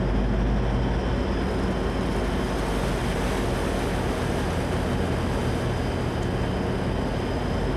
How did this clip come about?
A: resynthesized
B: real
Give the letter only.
B